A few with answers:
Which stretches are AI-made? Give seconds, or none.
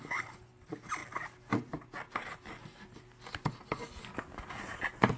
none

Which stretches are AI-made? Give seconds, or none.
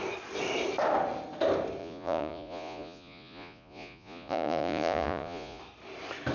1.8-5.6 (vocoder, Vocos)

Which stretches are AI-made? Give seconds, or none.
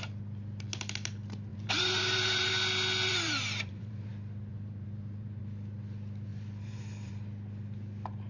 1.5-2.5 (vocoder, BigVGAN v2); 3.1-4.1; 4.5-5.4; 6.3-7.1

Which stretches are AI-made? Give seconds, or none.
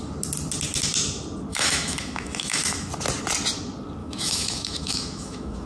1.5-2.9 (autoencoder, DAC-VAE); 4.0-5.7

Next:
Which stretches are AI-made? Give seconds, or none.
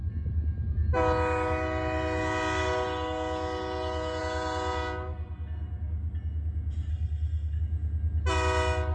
6.9-7.6 (codec, SNAC)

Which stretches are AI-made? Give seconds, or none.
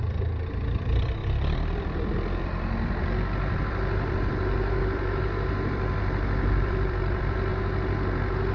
0.0-7.5 (vocoder, BigVGAN v2)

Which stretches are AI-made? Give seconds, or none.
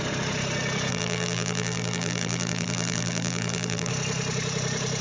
0.9-3.9 (vocoder, BigVGAN v2)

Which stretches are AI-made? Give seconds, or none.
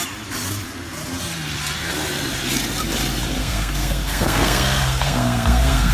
3.4-5.9 (codec, SNAC)